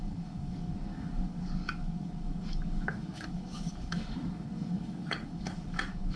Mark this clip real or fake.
fake